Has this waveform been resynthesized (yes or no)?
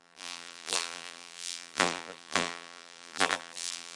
yes